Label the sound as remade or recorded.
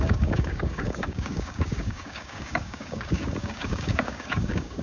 remade